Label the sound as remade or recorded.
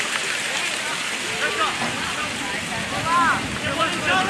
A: recorded